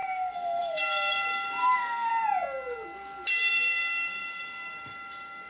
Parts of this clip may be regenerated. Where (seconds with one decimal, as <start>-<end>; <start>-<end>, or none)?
0.0-2.1; 3.3-5.5